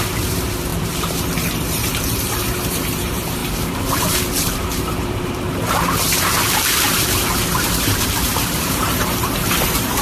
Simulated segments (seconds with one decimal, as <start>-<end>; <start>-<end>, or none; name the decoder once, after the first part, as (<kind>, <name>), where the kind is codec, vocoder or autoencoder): 0.0-10.0 (vocoder, BigVGAN v2)